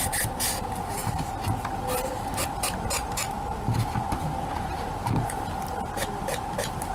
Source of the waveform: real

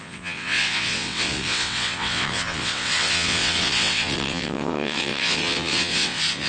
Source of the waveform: fake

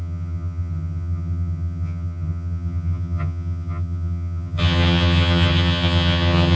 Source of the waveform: fake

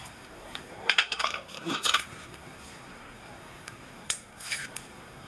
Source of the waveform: fake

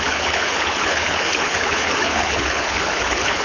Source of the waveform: fake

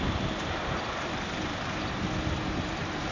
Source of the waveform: real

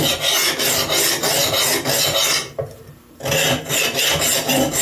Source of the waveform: real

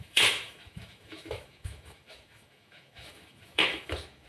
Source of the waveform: fake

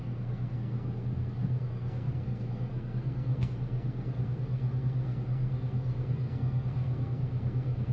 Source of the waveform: fake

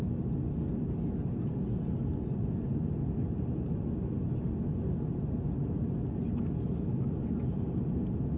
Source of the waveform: real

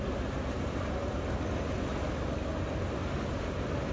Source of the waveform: real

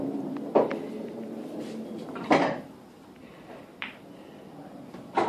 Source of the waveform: fake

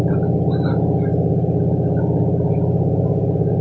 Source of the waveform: real